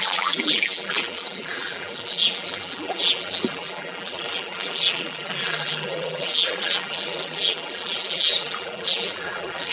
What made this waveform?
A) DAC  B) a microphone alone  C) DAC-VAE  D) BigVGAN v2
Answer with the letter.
D